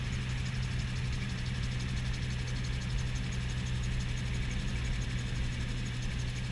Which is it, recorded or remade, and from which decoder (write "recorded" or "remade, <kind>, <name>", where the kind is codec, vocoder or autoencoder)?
recorded